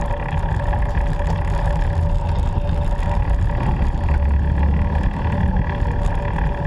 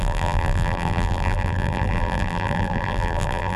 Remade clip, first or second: second